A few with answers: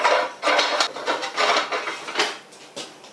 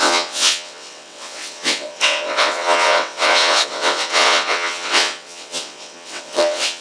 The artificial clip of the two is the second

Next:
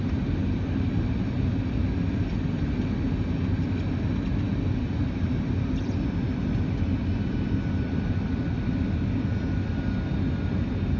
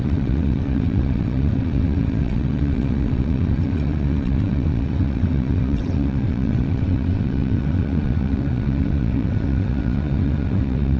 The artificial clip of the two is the second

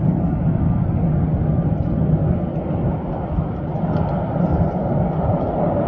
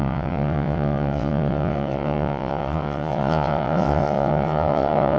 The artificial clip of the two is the second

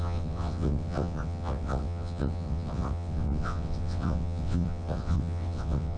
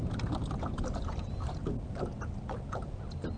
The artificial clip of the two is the first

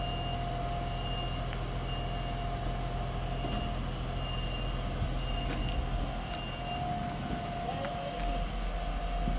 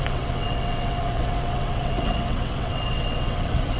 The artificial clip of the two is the second